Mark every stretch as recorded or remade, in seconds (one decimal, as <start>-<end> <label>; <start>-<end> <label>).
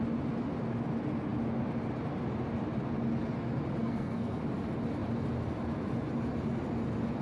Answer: 0.0-3.8 recorded; 3.8-4.4 remade; 4.4-7.2 recorded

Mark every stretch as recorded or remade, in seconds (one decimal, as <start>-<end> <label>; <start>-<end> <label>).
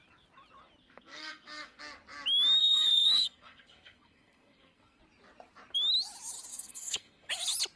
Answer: 0.0-0.8 recorded; 0.8-1.8 remade; 1.8-2.6 recorded; 2.6-5.0 remade; 5.0-6.5 recorded; 6.5-7.3 remade; 7.3-7.8 recorded